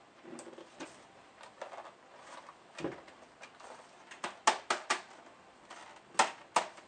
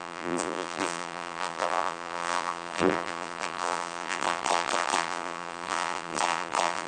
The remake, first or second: second